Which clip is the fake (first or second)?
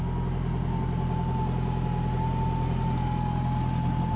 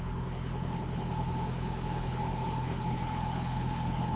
second